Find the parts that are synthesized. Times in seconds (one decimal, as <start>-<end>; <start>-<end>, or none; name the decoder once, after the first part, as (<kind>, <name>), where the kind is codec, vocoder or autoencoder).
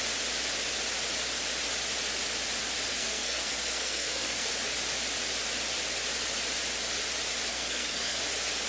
2.9-4.5 (codec, SNAC); 7.5-8.2